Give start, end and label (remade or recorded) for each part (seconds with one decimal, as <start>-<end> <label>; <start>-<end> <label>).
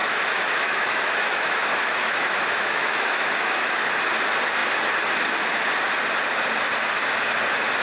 0.0-3.8 remade; 3.8-7.8 recorded